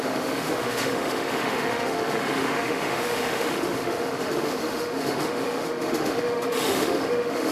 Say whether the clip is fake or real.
fake